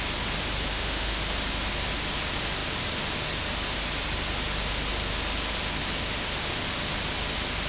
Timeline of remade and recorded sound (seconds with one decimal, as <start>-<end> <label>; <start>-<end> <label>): 0.0-0.7 recorded; 0.7-1.2 remade; 1.2-7.7 recorded